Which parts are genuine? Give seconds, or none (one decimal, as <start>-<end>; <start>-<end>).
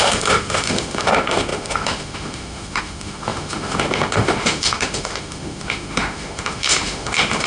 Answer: none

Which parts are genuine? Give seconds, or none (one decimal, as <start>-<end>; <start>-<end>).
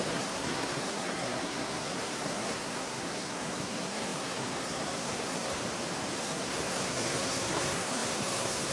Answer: 5.6-6.2